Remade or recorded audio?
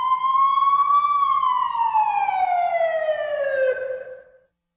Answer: recorded